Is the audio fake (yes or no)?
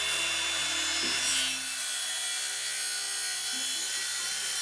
no